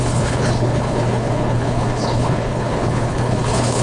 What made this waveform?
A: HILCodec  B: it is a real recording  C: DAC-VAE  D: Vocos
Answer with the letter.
A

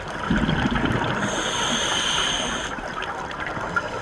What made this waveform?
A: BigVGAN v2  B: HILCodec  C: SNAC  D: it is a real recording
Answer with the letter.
D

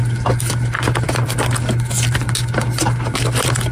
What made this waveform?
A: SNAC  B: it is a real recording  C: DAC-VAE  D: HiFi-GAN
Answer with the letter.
B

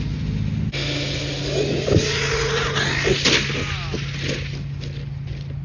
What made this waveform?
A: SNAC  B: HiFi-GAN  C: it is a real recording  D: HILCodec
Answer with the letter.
C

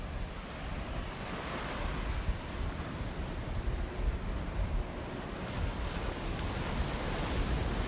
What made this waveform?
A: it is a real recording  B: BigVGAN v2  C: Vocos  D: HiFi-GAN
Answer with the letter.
A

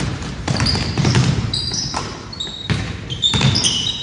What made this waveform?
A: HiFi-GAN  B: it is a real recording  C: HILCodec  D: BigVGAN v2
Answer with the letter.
D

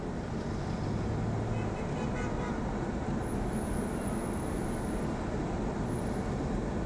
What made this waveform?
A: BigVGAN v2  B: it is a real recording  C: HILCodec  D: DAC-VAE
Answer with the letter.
B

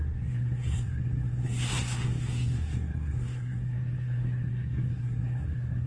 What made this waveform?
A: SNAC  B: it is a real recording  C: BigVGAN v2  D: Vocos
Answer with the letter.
A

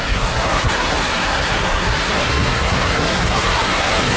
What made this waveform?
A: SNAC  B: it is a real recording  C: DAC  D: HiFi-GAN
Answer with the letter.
A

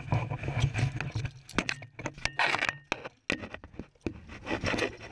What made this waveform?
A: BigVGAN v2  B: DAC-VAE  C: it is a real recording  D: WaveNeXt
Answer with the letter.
C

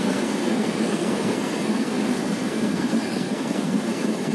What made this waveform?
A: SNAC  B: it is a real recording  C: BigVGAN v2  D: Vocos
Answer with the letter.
A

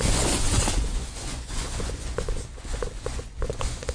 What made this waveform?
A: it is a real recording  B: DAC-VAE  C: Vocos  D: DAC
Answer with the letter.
C